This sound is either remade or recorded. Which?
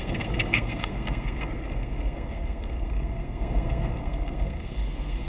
remade